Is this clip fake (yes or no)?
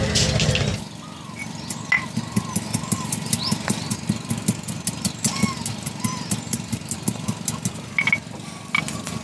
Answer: no